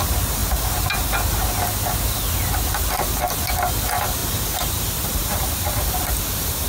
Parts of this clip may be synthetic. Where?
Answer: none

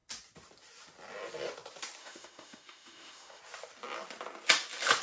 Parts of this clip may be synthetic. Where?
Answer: 2.0-3.4

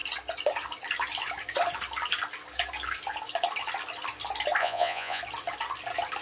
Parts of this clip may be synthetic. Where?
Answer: 4.6-5.2

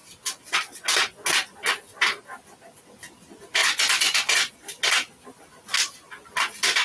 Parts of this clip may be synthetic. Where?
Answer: 3.6-4.5

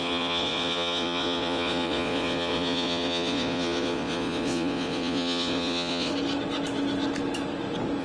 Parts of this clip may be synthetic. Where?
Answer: 0.0-6.1